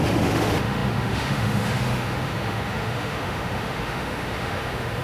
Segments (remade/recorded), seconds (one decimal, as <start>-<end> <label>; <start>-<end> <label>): 0.0-5.0 remade